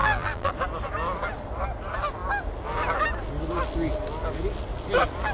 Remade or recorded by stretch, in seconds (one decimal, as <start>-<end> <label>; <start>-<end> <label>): 0.0-0.5 remade; 0.5-5.3 recorded